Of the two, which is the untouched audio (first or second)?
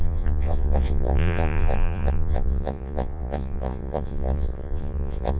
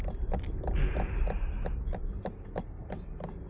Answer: second